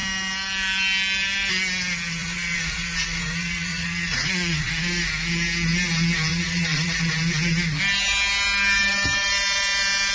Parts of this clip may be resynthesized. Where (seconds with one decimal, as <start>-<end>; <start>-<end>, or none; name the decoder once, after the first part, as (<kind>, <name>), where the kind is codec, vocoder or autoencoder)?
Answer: 2.2-4.7 (vocoder, Vocos); 6.3-7.0

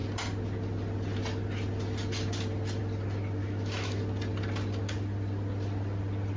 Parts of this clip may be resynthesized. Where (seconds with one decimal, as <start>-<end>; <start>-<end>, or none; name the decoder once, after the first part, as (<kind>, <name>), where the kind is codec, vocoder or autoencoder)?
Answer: 3.4-4.0 (autoencoder, DAC-VAE)

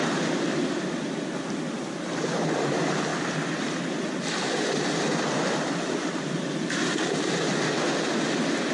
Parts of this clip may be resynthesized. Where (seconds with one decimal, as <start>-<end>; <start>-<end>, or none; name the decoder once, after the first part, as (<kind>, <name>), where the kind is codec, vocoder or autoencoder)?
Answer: none

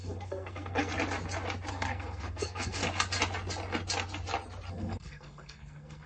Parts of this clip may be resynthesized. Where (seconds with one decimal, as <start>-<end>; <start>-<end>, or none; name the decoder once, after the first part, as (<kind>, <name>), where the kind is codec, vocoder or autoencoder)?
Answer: 0.0-0.9 (codec, SNAC); 1.7-2.8; 4.7-6.1